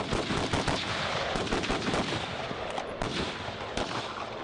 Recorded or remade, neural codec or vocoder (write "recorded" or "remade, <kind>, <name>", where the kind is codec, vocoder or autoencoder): recorded